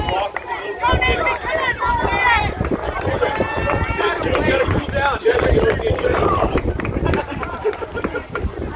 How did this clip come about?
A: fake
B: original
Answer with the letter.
A